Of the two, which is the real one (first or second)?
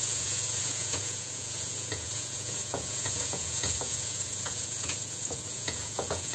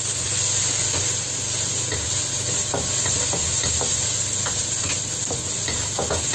second